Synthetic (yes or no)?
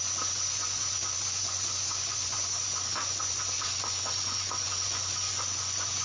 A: yes